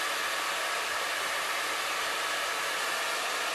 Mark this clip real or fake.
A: real